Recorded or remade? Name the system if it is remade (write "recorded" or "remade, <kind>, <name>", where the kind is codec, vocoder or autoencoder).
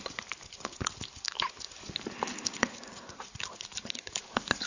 remade, vocoder, BigVGAN v2